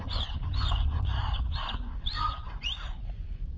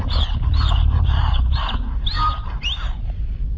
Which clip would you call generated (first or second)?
first